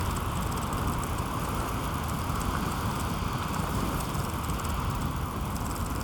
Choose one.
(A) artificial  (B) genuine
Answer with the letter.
B